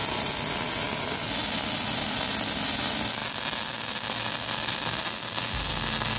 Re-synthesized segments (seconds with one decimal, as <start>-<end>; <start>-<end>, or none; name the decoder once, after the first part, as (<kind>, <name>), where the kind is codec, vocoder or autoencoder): none